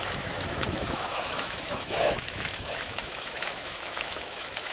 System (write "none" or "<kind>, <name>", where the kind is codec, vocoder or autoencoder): autoencoder, DAC-VAE